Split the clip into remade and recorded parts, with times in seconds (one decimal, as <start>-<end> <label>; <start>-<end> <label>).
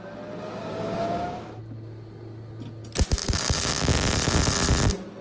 0.0-0.6 recorded; 0.6-1.6 remade; 1.6-3.2 recorded; 3.2-3.9 remade; 3.9-5.2 recorded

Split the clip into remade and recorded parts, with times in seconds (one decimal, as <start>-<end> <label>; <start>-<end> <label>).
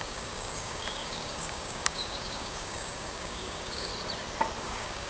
0.0-3.9 remade; 3.9-4.6 recorded; 4.6-5.1 remade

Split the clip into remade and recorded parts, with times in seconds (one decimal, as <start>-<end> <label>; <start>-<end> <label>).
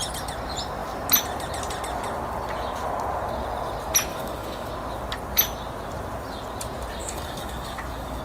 0.0-4.1 recorded; 4.1-4.7 remade; 4.7-7.0 recorded; 7.0-8.2 remade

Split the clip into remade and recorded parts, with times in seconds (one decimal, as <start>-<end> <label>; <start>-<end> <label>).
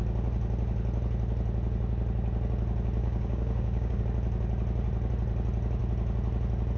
0.0-3.0 recorded; 3.0-4.0 remade; 4.0-6.8 recorded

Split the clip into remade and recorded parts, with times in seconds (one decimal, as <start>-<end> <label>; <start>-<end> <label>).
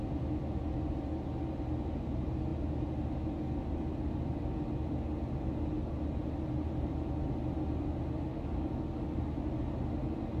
0.0-8.3 recorded; 8.3-9.2 remade; 9.2-10.4 recorded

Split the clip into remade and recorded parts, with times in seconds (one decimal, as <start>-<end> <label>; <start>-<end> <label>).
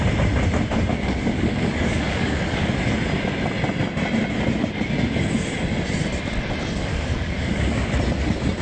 0.0-0.9 recorded; 0.9-2.7 remade; 2.7-6.9 recorded; 6.9-7.9 remade; 7.9-8.6 recorded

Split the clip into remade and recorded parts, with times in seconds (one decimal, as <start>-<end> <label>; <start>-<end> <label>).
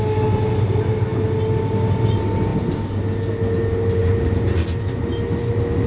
0.0-5.9 recorded